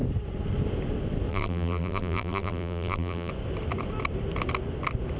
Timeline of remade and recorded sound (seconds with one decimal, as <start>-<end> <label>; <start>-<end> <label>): 0.0-1.3 recorded; 1.3-3.3 remade; 3.3-5.2 recorded